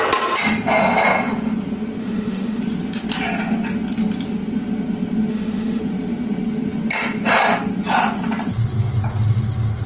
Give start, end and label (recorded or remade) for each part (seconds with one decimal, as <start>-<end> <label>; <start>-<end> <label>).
0.0-2.0 recorded; 2.0-2.6 remade; 2.6-5.3 recorded; 5.3-5.8 remade; 5.8-9.9 recorded